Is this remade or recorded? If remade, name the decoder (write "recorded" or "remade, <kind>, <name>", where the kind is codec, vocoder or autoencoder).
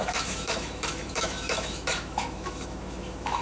remade, autoencoder, DAC-VAE